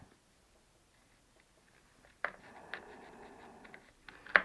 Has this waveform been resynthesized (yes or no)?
no